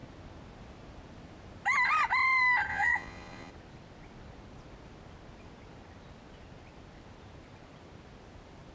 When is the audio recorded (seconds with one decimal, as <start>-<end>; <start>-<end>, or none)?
0.0-2.7; 3.5-8.7